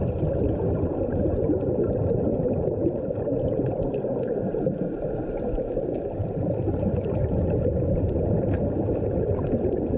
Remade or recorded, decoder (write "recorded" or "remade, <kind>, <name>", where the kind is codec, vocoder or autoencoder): remade, vocoder, BigVGAN v2